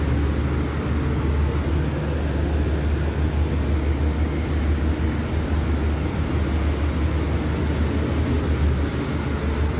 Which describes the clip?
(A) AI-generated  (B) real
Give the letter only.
B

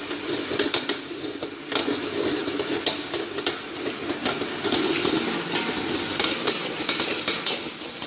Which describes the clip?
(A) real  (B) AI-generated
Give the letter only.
A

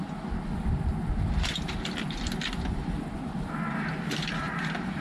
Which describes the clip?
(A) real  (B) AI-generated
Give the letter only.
A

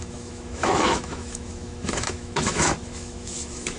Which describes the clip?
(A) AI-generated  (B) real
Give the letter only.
A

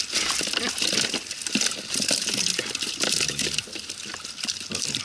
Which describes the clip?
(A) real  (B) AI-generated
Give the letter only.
A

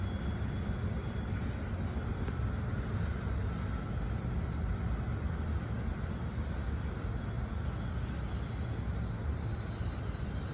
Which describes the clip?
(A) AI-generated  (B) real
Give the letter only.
B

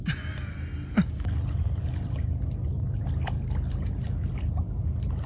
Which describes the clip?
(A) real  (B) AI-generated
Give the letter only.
A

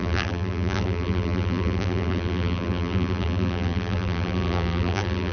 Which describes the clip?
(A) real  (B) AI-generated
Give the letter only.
B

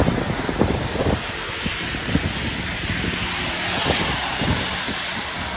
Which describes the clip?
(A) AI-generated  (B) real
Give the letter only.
B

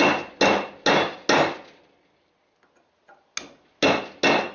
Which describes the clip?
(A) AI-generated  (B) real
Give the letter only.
B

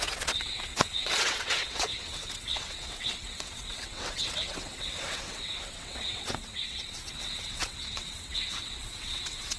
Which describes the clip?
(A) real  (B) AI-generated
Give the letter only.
B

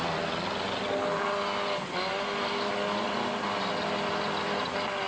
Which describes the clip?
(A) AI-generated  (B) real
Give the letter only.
B